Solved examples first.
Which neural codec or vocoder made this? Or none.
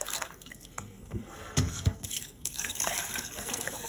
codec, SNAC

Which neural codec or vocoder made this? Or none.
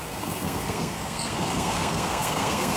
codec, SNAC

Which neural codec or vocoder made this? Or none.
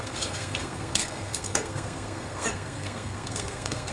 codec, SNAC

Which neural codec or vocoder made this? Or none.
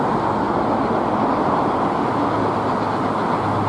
none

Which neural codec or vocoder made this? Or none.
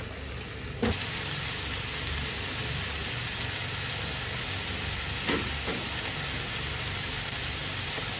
none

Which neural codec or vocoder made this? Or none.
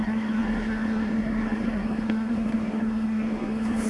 codec, SNAC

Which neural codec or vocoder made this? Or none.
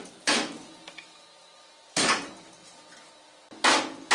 none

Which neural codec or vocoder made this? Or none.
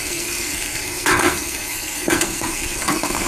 codec, SNAC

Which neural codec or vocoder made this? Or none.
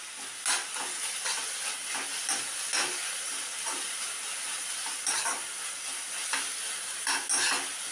none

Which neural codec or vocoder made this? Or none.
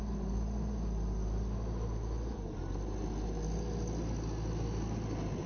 none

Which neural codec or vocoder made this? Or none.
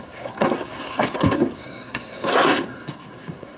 codec, SNAC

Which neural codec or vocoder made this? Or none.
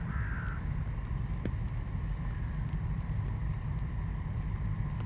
none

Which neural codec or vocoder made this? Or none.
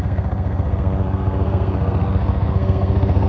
codec, SNAC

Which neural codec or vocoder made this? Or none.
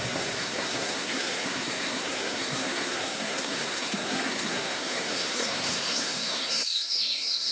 codec, SNAC